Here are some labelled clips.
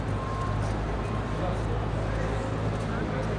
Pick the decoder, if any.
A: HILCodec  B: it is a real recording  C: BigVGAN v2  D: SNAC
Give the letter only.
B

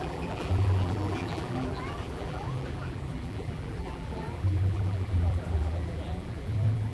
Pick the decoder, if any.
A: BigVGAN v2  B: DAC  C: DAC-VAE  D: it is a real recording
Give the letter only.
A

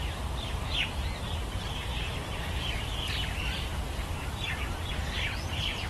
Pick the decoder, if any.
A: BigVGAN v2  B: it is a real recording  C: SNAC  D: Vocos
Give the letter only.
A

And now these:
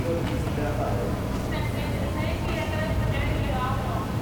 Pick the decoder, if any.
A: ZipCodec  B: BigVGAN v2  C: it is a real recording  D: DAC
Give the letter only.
C